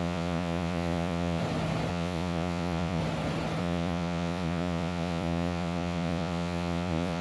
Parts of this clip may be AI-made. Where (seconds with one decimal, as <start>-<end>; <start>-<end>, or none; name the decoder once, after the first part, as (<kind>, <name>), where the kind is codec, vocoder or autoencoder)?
0.0-1.4 (vocoder, Vocos); 1.9-3.0; 3.6-7.2